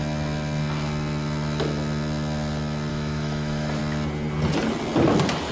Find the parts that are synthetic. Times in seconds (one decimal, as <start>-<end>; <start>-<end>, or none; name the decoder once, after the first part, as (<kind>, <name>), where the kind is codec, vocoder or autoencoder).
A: 2.9-3.8 (autoencoder, DAC-VAE)

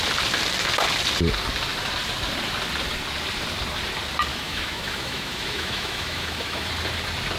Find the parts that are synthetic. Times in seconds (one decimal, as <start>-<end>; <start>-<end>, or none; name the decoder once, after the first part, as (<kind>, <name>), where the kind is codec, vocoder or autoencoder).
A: 4.3-6.7 (autoencoder, DAC-VAE)